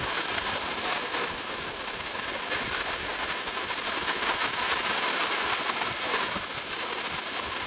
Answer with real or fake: real